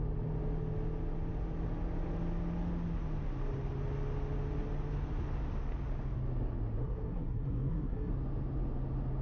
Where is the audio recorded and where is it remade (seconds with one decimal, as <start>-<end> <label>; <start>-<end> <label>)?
0.0-6.8 recorded; 6.8-8.1 remade; 8.1-9.2 recorded